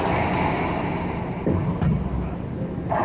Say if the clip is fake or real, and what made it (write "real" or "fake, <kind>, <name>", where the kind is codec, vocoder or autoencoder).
real